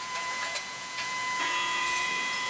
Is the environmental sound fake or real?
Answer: fake